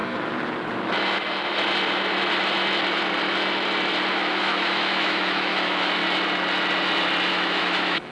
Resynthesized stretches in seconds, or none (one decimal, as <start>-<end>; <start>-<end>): 4.1-6.0; 7.3-8.1